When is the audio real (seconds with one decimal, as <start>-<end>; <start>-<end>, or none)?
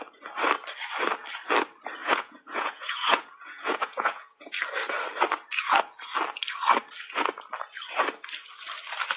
0.0-2.0; 4.5-9.2